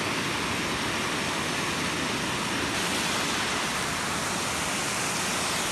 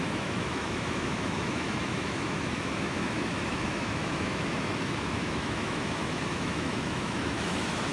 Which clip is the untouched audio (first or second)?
first